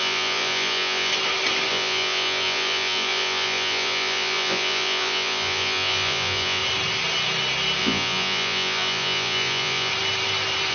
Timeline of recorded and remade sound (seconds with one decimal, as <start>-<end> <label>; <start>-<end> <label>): 0.0-1.1 remade; 1.1-1.7 recorded; 1.7-6.6 remade; 6.6-7.8 recorded; 7.8-9.9 remade; 9.9-10.7 recorded